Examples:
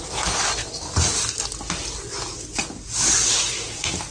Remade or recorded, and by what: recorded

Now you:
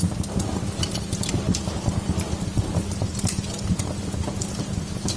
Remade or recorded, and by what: recorded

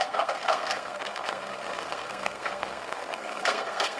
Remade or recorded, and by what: remade, codec, SNAC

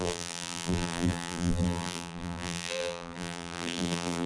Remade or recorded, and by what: remade, vocoder, BigVGAN v2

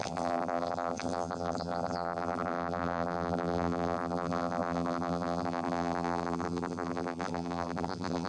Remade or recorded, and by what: remade, vocoder, BigVGAN v2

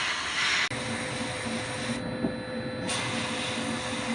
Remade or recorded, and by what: recorded